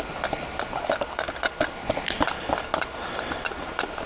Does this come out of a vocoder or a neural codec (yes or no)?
no